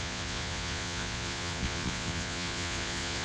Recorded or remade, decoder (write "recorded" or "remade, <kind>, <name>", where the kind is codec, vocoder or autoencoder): remade, vocoder, Vocos